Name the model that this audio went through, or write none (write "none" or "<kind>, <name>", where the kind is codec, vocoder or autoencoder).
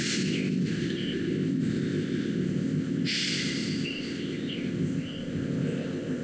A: codec, ZipCodec